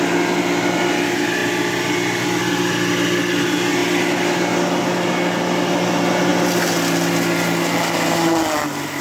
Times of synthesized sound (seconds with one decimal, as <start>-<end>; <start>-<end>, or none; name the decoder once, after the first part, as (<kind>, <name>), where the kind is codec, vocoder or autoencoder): none